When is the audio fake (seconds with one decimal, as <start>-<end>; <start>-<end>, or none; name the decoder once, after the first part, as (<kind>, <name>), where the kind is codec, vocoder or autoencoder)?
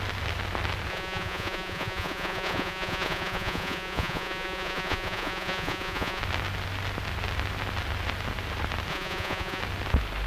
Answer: 0.9-6.2 (vocoder, Vocos); 8.9-9.6